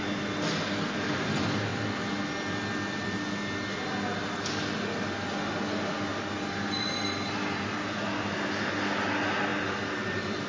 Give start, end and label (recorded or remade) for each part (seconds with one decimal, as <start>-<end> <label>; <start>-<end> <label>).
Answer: 0.0-10.5 recorded